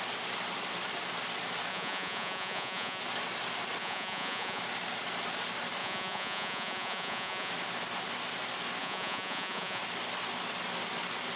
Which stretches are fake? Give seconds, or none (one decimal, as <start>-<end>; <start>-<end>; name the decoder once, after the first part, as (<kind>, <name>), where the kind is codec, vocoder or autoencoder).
1.7-3.0 (vocoder, Vocos); 3.8-4.6; 5.8-7.5; 8.8-9.8